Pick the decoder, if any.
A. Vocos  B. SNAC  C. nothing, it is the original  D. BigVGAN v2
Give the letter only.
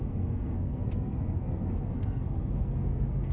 B